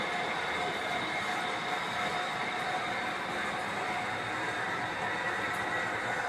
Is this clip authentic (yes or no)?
yes